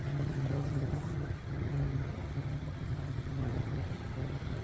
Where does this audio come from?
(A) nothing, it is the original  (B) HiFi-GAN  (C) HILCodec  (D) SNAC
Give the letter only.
B